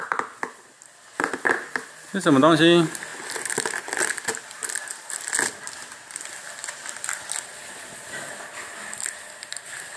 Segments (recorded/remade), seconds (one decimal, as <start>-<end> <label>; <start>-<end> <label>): 0.0-10.0 recorded